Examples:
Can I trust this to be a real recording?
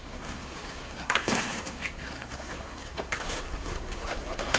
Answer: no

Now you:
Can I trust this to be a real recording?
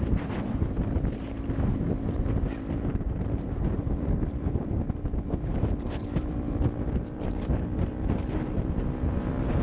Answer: no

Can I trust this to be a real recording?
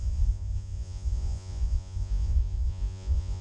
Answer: no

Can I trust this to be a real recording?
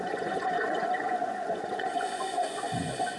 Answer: no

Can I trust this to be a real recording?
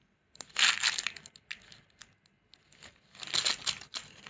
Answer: yes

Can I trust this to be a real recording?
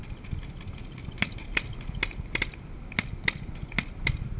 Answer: yes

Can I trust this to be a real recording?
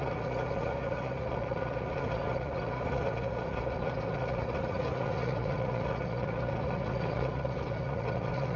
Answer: no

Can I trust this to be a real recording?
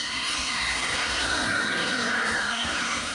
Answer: no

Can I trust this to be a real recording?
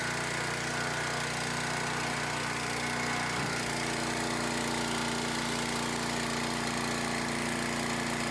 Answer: yes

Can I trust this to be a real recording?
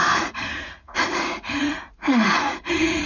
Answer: no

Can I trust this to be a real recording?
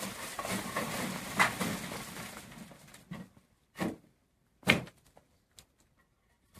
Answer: no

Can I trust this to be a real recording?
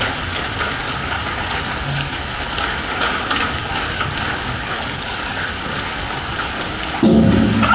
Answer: no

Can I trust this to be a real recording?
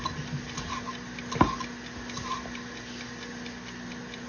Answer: yes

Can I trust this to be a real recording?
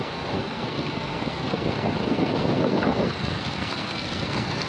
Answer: no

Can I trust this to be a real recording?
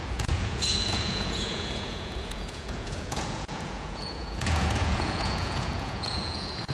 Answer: no